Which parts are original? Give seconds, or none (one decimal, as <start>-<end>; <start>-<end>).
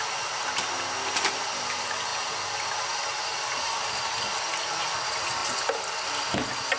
0.0-6.8